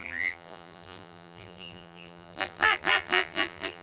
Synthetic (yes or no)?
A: yes